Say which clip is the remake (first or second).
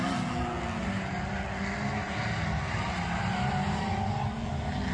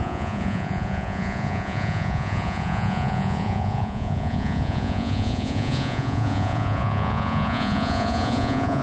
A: second